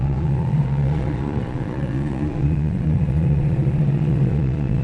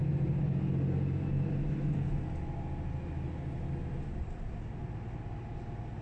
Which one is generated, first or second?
first